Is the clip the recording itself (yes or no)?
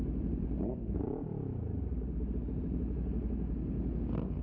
yes